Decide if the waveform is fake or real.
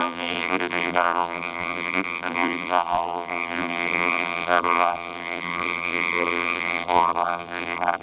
fake